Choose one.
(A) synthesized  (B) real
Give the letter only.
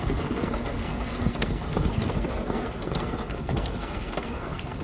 A